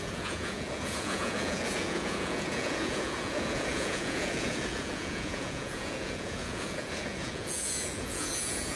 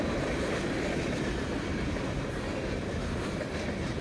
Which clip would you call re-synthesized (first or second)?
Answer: first